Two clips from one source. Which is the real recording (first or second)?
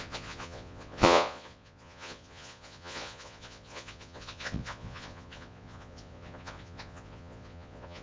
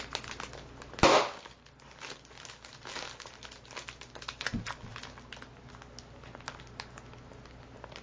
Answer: second